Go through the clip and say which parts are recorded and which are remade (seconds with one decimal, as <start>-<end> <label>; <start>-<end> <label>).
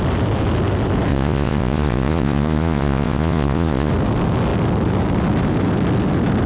0.0-1.1 recorded; 1.1-3.9 remade; 3.9-6.5 recorded